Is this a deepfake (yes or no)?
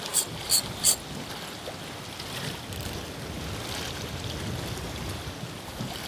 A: no